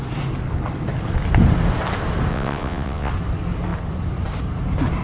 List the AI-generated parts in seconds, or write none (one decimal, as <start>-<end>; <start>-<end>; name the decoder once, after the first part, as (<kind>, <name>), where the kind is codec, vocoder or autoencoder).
2.3-3.1 (vocoder, WaveNeXt)